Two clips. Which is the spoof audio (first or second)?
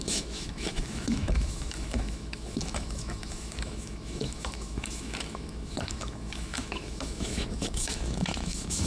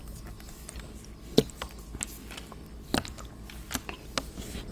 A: first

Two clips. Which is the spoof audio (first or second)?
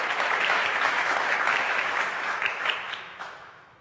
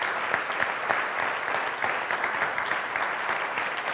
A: first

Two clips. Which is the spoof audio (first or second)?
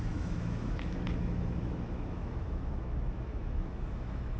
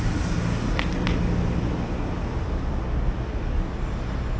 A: first